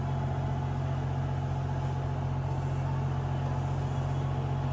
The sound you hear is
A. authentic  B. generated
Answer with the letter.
A